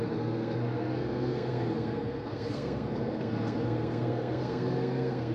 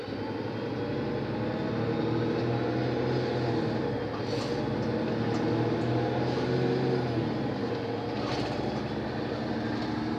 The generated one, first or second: first